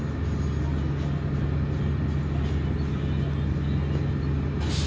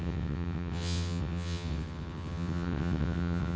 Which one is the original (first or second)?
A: first